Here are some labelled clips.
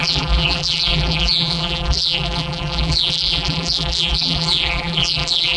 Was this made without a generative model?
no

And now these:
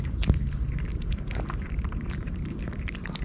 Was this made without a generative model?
no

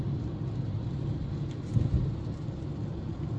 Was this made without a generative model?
yes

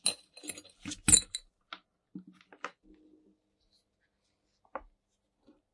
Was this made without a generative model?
yes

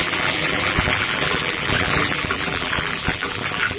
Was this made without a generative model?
no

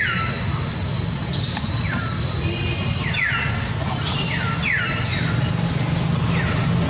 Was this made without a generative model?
yes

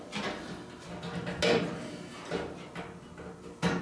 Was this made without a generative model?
yes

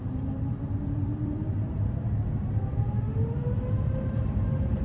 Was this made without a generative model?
no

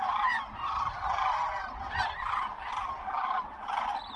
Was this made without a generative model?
yes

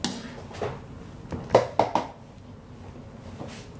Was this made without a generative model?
yes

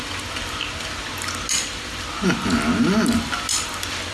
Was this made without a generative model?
yes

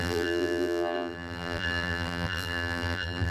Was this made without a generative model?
no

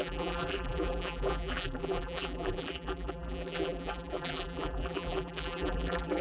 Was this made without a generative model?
no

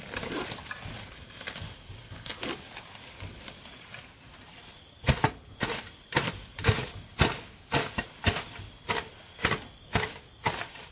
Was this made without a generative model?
yes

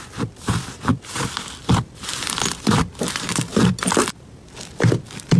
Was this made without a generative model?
no